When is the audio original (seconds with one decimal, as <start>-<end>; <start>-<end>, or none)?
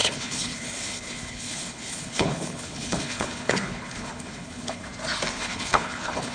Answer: 4.8-5.4